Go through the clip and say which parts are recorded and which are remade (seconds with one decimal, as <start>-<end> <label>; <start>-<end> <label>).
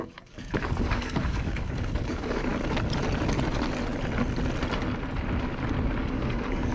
0.0-2.5 remade; 2.5-6.0 recorded; 6.0-6.7 remade